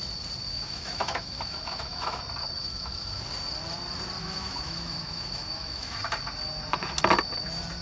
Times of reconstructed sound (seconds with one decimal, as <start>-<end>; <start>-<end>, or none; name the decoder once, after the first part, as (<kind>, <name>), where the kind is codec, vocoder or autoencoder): 0.5-2.2 (autoencoder, DAC-VAE); 2.6-3.2; 4.2-6.0